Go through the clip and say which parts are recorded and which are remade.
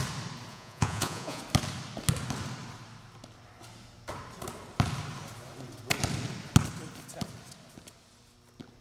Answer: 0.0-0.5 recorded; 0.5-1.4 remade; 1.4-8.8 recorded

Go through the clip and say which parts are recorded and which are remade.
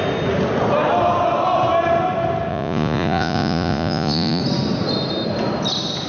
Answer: 0.0-2.5 recorded; 2.5-4.4 remade; 4.4-6.1 recorded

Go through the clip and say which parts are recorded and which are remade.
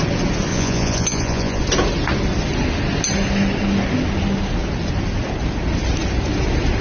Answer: 0.0-0.5 recorded; 0.5-1.6 remade; 1.6-6.8 recorded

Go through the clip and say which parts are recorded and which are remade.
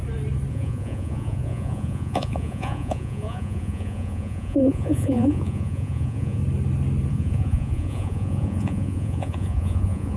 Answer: 0.0-0.5 recorded; 0.5-6.4 remade; 6.4-7.1 recorded; 7.1-10.2 remade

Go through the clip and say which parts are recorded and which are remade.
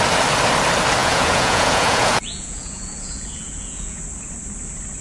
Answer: 0.0-1.0 recorded; 1.0-4.0 remade; 4.0-5.0 recorded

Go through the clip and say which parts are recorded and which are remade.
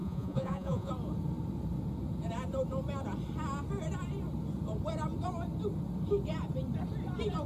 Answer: 0.0-0.9 remade; 0.9-7.5 recorded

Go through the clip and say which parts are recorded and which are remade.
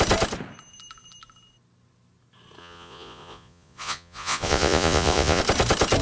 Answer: 0.0-2.6 recorded; 2.6-5.4 remade; 5.4-6.0 recorded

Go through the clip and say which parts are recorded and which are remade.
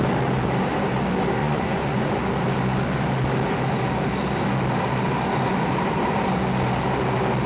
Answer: 0.0-1.4 recorded; 1.4-2.1 remade; 2.1-7.5 recorded